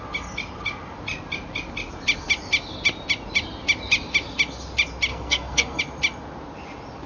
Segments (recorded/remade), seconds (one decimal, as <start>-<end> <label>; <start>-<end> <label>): 0.0-5.1 recorded; 5.1-5.8 remade; 5.8-7.1 recorded